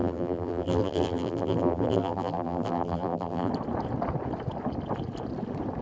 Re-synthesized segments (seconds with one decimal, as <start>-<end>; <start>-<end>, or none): 0.0-3.5